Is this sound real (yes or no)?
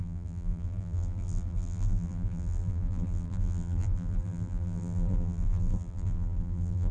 no